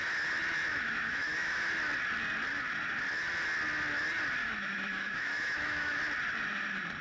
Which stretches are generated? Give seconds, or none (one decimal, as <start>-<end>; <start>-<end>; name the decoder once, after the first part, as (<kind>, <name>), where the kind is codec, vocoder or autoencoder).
0.7-1.7 (autoencoder, DAC-VAE); 4.4-6.0